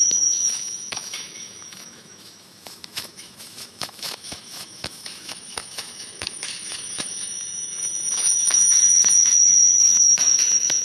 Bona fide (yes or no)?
no